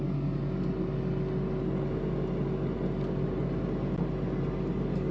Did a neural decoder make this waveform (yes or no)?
no